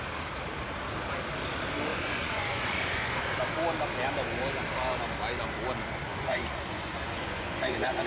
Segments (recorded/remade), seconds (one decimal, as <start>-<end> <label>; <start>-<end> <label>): 0.0-1.9 recorded; 1.9-3.2 remade; 3.2-6.1 recorded; 6.1-8.1 remade